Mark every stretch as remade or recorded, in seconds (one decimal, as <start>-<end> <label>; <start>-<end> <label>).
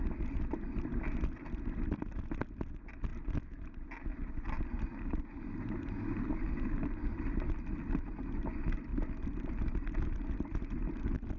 0.0-11.4 recorded